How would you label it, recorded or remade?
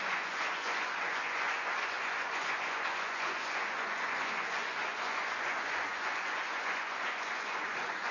remade